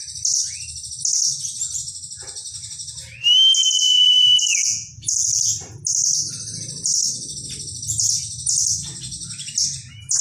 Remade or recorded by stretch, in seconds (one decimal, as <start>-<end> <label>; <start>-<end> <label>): 0.0-3.6 recorded; 3.6-5.4 remade; 5.4-10.2 recorded